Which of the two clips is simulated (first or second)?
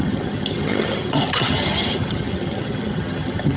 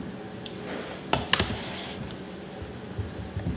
first